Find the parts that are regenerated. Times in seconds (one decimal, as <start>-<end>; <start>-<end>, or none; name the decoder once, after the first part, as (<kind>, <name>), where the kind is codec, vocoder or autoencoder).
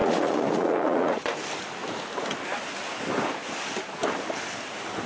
0.0-1.2 (vocoder, Vocos)